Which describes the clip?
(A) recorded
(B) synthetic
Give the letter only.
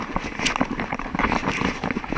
A